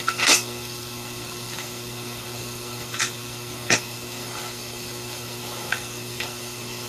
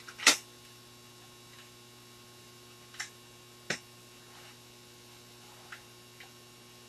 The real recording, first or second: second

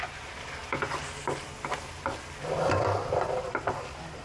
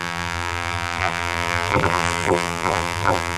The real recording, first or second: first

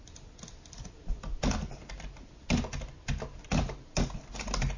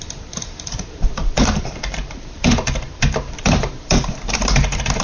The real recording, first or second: first